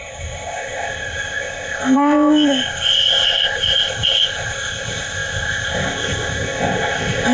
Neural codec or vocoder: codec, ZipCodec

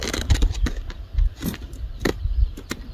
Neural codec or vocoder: none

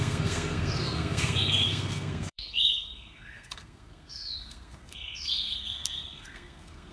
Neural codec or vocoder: codec, SNAC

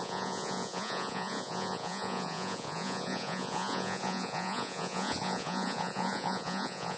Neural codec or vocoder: vocoder, Vocos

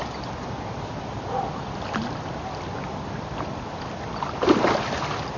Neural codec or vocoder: none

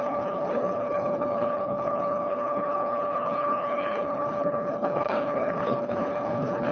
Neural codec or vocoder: codec, HILCodec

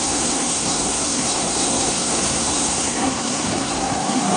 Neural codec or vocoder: codec, SNAC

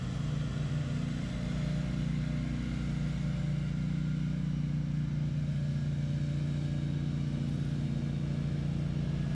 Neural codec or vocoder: none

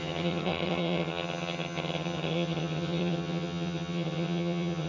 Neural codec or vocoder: vocoder, HiFi-GAN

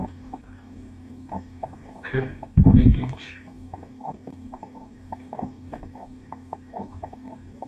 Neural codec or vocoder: codec, DAC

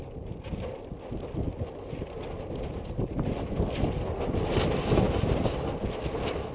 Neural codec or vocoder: none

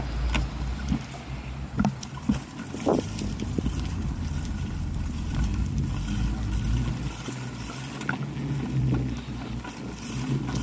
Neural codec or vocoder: none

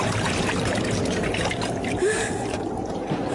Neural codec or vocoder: vocoder, BigVGAN v2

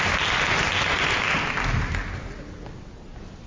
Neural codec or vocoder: none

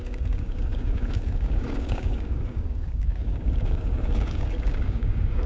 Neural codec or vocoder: codec, DAC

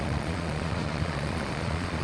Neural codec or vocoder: vocoder, Vocos